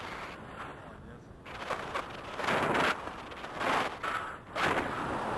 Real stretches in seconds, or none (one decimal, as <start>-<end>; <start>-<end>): 0.0-5.4

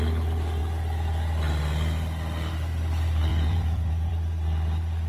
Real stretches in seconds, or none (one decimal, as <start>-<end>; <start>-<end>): 0.0-3.3; 4.1-5.1

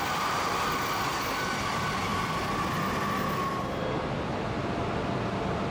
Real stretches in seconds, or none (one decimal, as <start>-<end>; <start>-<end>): 1.1-1.7; 2.1-5.7

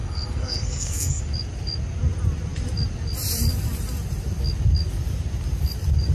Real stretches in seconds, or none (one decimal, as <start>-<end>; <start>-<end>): 1.2-6.1

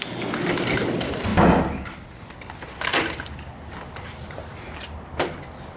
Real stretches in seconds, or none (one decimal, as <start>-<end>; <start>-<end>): 0.0-5.8

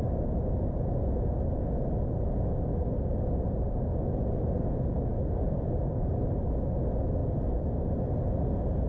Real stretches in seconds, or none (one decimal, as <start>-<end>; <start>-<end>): 0.0-8.9

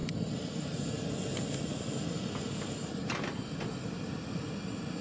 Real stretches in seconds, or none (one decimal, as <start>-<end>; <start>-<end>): 0.0-5.0

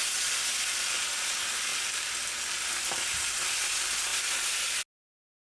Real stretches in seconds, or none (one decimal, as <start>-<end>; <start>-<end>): 0.0-5.6